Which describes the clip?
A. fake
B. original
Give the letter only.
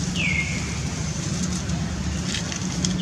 B